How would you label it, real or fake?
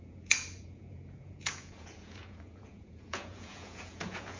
fake